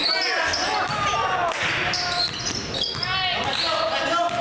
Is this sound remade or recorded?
recorded